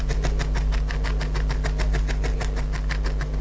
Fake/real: real